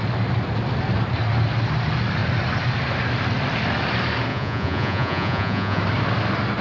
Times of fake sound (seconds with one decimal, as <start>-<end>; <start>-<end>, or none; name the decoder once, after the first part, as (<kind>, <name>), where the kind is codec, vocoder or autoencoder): 4.3-5.8 (vocoder, Vocos)